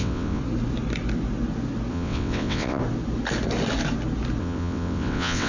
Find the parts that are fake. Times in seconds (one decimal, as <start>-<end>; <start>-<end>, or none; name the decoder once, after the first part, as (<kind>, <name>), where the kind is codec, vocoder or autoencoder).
0.0-0.4 (vocoder, WaveNeXt); 1.9-2.8; 4.4-5.5